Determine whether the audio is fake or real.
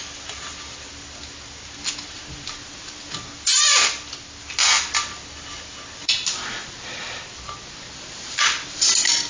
real